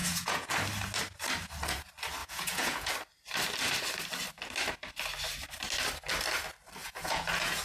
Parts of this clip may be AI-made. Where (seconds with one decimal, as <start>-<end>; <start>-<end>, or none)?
0.0-0.5; 2.2-2.9; 6.8-7.6